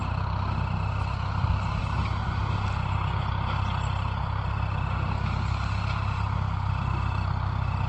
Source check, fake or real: real